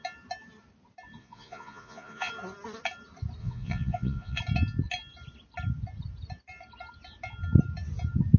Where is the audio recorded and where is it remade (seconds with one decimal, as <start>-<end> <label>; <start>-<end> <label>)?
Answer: 0.0-1.2 recorded; 1.2-2.3 remade; 2.3-3.4 recorded; 3.4-4.4 remade; 4.4-8.4 recorded